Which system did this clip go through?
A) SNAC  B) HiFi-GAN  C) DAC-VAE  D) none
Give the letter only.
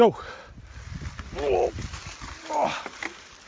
D